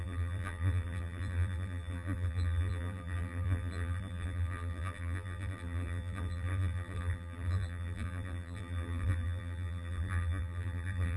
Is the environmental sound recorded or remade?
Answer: remade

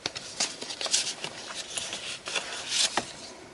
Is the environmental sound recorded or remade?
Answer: recorded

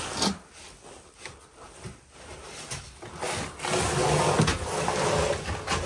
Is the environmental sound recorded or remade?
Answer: recorded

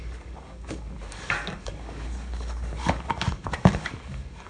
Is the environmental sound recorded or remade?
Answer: remade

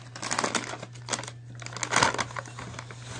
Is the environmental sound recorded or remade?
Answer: recorded